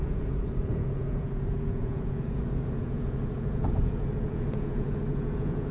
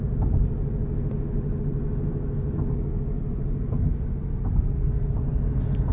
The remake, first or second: first